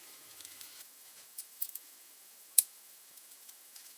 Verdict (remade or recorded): remade